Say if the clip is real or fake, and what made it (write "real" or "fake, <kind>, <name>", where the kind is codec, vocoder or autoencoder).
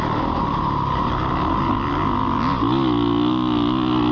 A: real